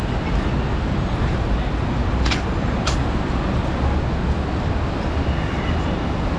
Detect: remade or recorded recorded